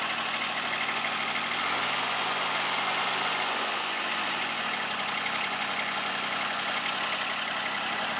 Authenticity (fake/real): fake